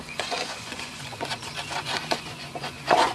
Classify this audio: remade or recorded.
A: remade